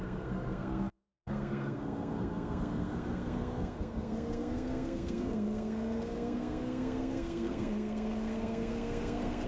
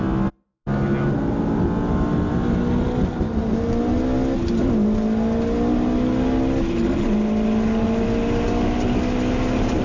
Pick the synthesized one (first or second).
first